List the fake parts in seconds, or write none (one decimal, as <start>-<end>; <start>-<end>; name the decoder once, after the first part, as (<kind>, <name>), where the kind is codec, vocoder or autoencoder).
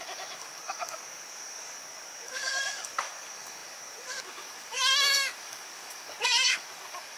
0.0-7.2 (codec, DAC)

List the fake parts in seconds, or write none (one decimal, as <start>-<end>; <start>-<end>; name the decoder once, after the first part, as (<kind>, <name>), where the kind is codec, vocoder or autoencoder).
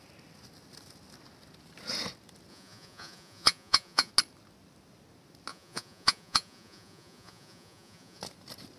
2.5-4.1 (vocoder, Vocos); 5.5-8.2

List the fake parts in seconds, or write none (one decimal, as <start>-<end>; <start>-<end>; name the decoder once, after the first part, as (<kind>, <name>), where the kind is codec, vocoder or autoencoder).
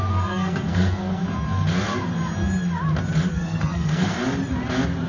0.0-1.2 (codec, SNAC); 3.3-4.2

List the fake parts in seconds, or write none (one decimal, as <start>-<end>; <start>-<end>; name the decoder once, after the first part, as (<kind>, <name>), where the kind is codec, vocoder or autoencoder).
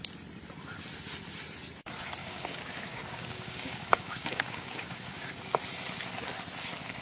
2.2-5.3 (codec, DAC)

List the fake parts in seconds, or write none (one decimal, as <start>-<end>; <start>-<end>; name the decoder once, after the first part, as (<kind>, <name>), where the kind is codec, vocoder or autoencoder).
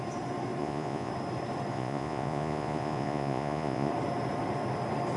0.6-1.1 (vocoder, Vocos); 1.7-3.9